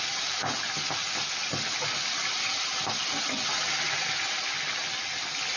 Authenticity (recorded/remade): recorded